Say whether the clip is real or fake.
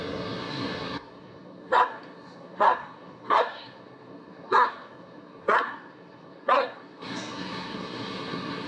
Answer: fake